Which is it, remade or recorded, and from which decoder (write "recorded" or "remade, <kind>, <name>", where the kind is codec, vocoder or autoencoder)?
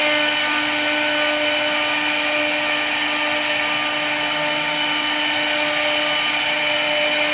recorded